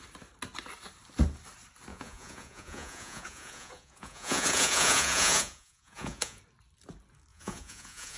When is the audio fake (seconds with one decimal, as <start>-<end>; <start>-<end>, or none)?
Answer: 1.9-6.4; 7.3-8.2